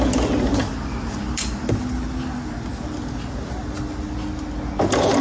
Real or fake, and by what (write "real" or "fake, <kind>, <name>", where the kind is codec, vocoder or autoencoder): real